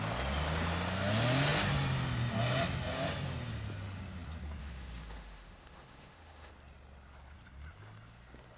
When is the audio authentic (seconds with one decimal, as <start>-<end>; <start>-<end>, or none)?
0.0-4.6; 6.5-8.6